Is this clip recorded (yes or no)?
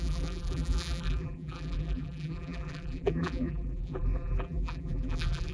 no